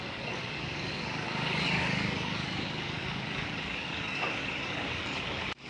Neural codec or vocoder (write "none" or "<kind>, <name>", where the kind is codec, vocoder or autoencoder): codec, DAC